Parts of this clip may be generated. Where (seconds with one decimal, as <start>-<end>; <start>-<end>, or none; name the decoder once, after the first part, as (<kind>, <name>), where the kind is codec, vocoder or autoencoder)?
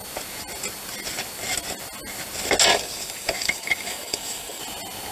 2.7-4.6 (codec, DAC)